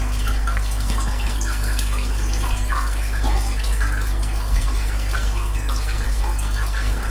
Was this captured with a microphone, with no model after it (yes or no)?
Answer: no